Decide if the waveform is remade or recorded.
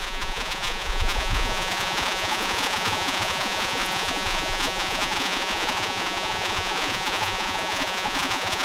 remade